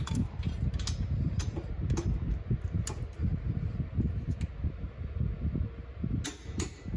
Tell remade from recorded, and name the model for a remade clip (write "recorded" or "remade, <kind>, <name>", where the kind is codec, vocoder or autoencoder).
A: recorded